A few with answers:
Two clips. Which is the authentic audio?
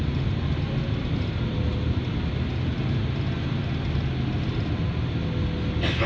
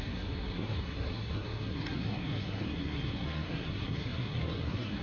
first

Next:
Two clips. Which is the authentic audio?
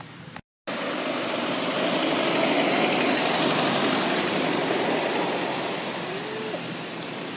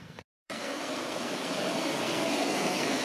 first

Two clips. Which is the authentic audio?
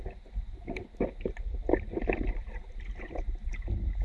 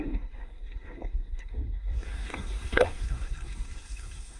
first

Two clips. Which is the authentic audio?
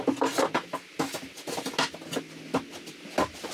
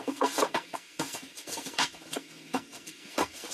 first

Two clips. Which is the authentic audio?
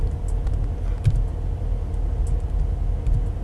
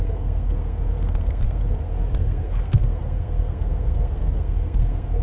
first